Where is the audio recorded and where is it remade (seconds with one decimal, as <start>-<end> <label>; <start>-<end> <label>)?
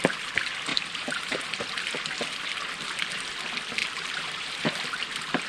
0.0-0.7 recorded; 0.7-1.4 remade; 1.4-3.8 recorded; 3.8-4.8 remade; 4.8-5.5 recorded